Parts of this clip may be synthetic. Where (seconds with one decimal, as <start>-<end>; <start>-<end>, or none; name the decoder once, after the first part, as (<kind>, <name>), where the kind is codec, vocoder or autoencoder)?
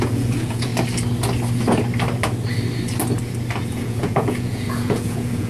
0.0-0.7 (vocoder, Vocos); 3.7-5.5